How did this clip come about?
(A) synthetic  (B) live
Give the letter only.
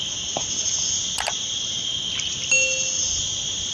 B